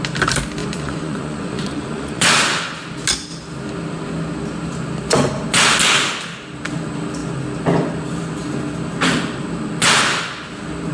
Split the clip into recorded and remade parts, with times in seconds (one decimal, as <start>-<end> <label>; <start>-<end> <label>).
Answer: 0.0-0.6 recorded; 0.6-2.2 remade; 2.2-10.9 recorded